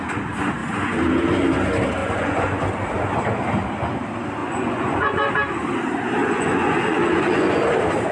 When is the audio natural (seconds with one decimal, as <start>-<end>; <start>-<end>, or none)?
0.0-2.0; 2.6-4.4; 5.3-6.2; 7.6-8.1

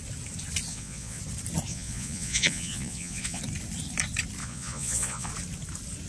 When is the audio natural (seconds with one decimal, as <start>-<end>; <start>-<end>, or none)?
0.0-0.7; 1.2-1.7; 3.4-4.4; 5.3-6.1

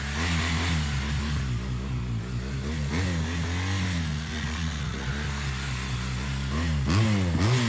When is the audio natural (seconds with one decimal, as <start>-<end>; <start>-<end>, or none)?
0.0-4.1; 5.1-7.7

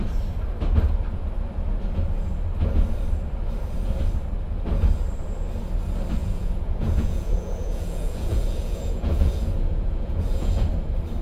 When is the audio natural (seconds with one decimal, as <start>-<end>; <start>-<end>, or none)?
0.0-6.2; 10.7-11.2

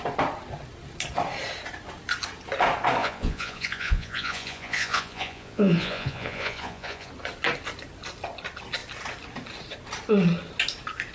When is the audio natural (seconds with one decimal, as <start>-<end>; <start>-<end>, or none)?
0.0-3.0; 7.1-11.1

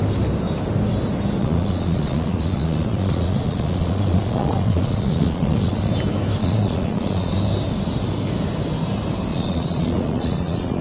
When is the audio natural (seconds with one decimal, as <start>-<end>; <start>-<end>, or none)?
0.0-1.4; 5.9-6.4; 7.4-9.3

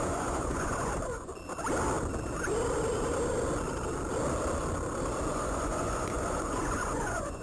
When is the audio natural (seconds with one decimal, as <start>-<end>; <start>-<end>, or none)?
1.3-5.3

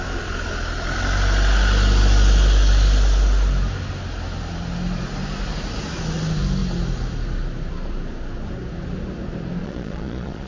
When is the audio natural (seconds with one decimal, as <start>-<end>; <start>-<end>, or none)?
0.0-9.6